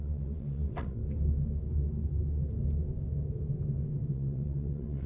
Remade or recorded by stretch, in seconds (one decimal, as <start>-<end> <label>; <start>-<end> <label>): 0.0-1.0 remade; 1.0-4.1 recorded; 4.1-5.1 remade